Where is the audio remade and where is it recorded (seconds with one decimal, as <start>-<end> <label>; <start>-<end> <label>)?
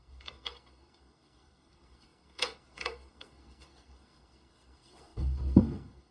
0.0-6.1 remade